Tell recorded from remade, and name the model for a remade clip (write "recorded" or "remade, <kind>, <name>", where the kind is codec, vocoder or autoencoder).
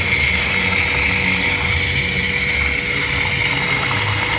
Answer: recorded